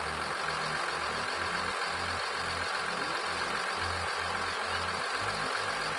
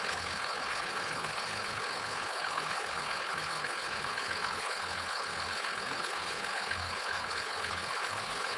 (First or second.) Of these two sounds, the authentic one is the first